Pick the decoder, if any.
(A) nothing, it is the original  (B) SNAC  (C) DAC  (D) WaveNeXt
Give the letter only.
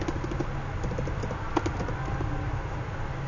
A